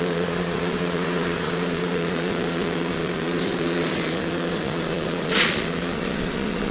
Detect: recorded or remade remade